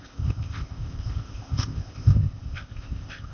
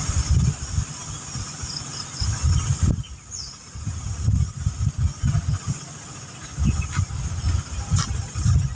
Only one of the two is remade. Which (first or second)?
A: first